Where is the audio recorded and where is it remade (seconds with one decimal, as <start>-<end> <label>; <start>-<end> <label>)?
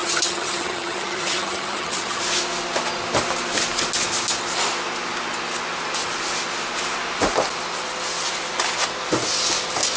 0.0-2.2 remade; 2.2-10.0 recorded